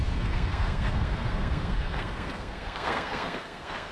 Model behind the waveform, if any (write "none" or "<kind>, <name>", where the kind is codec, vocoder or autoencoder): codec, SNAC